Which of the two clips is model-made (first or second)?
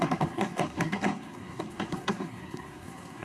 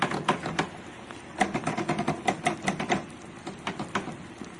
first